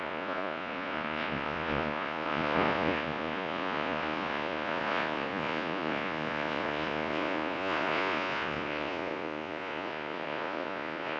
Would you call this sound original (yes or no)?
no